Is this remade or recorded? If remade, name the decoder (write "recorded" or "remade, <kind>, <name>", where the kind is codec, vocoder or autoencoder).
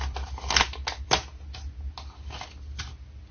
recorded